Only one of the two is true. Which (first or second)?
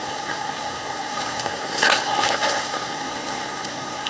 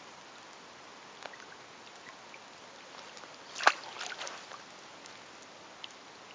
second